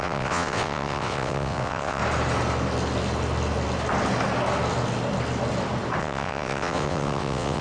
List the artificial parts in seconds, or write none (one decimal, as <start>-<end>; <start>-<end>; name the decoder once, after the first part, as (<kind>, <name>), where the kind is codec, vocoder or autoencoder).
0.0-2.0 (vocoder, WaveNeXt); 6.0-7.6